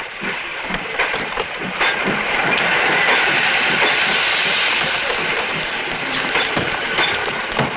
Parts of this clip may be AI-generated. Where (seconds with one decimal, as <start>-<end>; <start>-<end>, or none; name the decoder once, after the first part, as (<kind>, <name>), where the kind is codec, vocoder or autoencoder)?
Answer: none